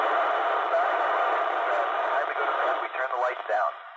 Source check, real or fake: real